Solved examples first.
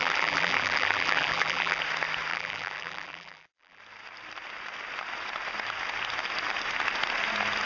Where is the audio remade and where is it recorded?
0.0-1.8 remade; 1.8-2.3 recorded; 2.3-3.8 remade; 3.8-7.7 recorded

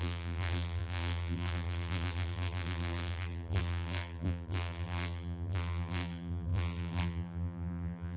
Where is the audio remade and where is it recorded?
0.0-8.2 remade

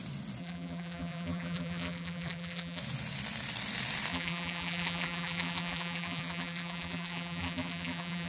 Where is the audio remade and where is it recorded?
0.0-0.4 recorded; 0.4-2.8 remade; 2.8-4.1 recorded; 4.1-8.3 remade

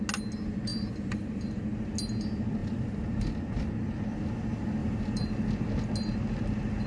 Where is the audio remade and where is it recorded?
0.0-0.7 recorded; 0.7-1.5 remade; 1.5-2.6 recorded; 2.6-3.7 remade; 3.7-4.8 recorded; 4.8-5.5 remade; 5.5-6.9 recorded

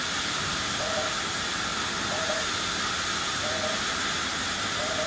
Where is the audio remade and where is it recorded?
0.0-5.1 recorded